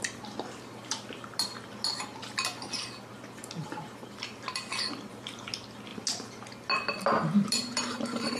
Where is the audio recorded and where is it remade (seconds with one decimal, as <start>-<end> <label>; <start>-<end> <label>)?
0.0-8.4 recorded